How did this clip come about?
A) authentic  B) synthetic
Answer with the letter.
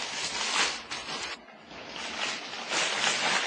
A